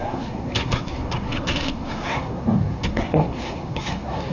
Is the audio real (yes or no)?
no